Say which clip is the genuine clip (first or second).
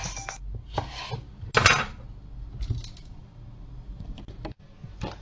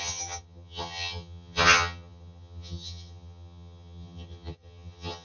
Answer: first